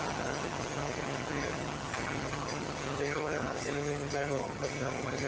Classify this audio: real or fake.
fake